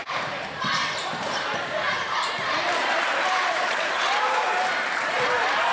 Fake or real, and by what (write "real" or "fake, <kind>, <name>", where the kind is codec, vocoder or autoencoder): fake, vocoder, BigVGAN v2